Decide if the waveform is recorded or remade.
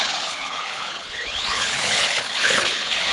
remade